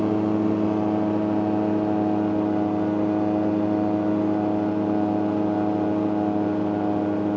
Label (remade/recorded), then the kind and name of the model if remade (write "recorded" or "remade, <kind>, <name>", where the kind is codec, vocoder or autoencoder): recorded